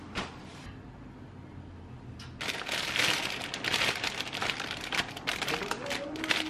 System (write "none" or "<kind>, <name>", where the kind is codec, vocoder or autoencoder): none